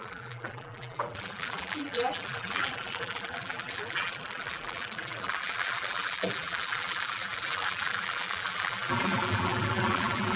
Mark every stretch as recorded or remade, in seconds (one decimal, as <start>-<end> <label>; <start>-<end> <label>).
0.0-10.4 remade